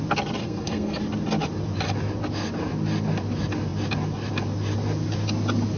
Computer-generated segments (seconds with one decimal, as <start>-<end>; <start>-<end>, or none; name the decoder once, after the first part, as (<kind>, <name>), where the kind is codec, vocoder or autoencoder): 0.4-1.0 (codec, SNAC)